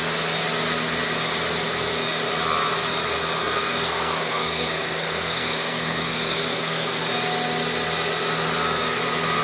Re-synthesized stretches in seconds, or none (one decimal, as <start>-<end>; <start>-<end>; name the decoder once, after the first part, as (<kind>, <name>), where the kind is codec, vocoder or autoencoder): 3.4-7.0 (codec, SNAC)